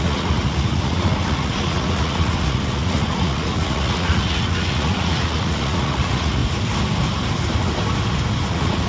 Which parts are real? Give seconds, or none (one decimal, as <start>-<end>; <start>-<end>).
6.4-8.5